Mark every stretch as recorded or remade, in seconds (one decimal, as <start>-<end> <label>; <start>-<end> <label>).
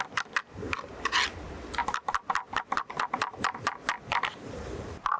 0.0-5.2 recorded